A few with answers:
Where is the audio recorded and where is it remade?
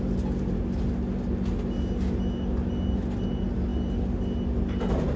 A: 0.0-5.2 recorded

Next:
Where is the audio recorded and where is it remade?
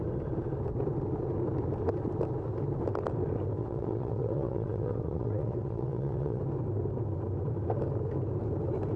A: 0.0-3.6 recorded; 3.6-6.4 remade; 6.4-9.0 recorded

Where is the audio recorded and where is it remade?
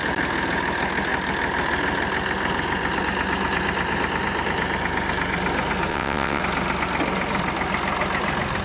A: 0.0-5.9 recorded; 5.9-6.4 remade; 6.4-8.6 recorded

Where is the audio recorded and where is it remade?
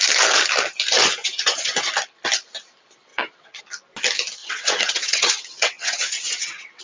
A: 0.0-1.2 recorded; 1.2-1.9 remade; 1.9-3.1 recorded; 3.1-3.6 remade; 3.6-4.4 recorded; 4.4-6.8 remade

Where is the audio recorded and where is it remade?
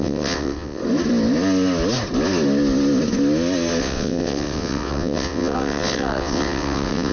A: 0.0-0.8 remade; 0.8-3.8 recorded; 3.8-7.1 remade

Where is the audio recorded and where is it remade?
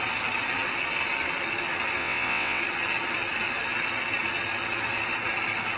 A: 0.0-2.0 recorded; 2.0-2.6 remade; 2.6-5.8 recorded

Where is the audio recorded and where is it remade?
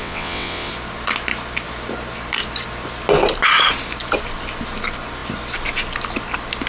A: 0.0-0.7 remade; 0.7-6.7 recorded